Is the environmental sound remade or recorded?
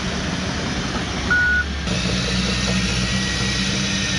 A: recorded